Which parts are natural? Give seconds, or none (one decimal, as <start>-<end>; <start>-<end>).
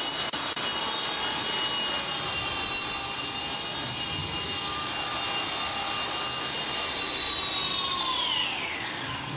0.0-8.4